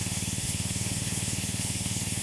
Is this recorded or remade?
remade